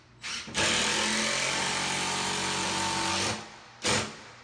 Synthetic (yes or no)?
no